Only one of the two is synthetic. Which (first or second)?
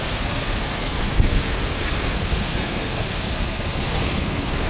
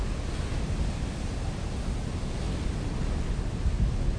first